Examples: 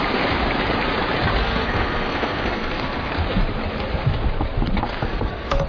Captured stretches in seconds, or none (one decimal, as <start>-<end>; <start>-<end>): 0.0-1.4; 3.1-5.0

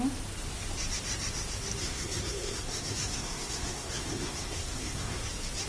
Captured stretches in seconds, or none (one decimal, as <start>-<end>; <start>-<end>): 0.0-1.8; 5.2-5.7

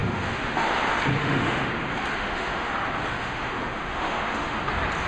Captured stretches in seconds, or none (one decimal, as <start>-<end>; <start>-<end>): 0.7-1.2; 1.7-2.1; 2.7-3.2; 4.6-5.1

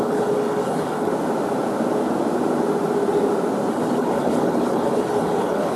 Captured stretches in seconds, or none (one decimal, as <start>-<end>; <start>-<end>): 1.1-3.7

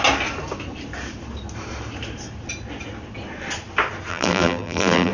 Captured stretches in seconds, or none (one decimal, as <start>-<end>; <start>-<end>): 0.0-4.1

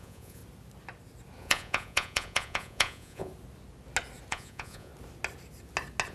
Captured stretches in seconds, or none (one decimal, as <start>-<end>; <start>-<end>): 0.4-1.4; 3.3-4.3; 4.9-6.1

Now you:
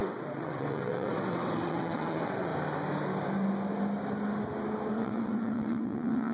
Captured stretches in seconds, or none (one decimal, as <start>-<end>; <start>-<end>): 2.5-4.9

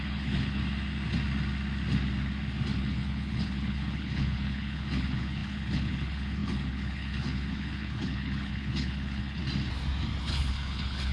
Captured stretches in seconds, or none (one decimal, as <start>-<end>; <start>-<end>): 0.6-2.8; 9.4-10.2